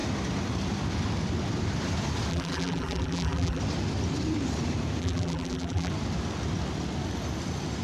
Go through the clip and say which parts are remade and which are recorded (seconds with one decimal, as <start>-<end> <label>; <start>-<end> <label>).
0.0-2.3 recorded; 2.3-3.6 remade; 3.6-5.0 recorded; 5.0-5.9 remade; 5.9-7.8 recorded